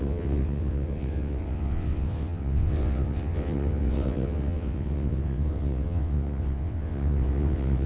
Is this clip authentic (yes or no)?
no